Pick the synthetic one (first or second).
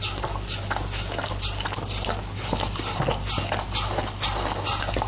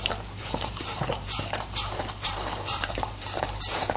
second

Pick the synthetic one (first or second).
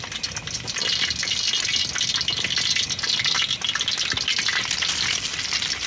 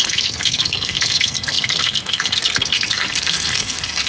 second